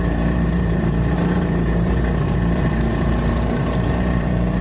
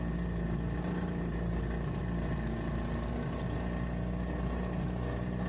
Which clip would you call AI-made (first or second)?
first